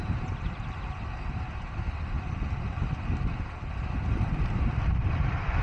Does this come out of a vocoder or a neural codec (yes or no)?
no